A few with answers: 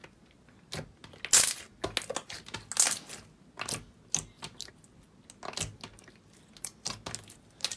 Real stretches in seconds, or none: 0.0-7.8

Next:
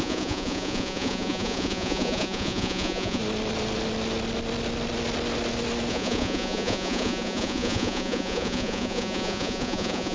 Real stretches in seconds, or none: 3.2-5.9

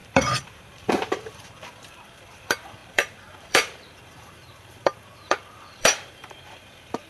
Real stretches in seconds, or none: none